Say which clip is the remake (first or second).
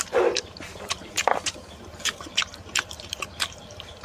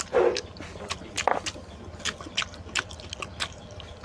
first